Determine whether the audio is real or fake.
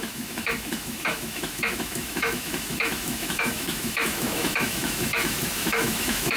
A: fake